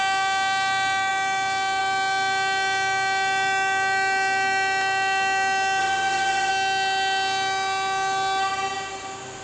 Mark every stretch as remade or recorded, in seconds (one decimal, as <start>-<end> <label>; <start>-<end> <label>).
0.0-5.8 recorded; 5.8-6.5 remade; 6.5-9.4 recorded